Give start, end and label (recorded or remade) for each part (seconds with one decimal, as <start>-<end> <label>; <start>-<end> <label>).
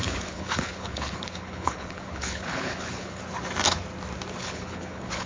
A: 0.0-3.2 remade; 3.2-4.4 recorded; 4.4-5.3 remade